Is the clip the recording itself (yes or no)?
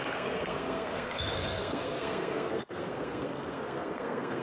no